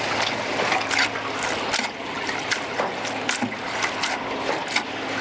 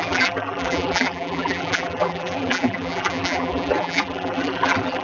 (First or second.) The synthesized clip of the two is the second